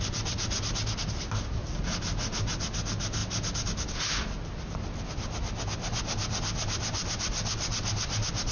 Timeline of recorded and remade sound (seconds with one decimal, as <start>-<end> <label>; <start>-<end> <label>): 0.0-8.5 recorded